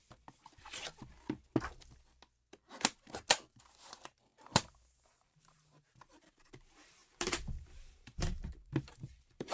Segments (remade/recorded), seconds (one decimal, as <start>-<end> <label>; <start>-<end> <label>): 0.0-3.5 recorded; 3.5-9.5 remade